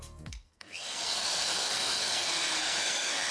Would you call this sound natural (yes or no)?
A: no